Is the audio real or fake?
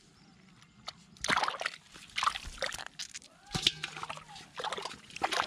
real